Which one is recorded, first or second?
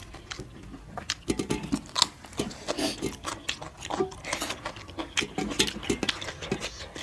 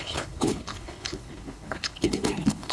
first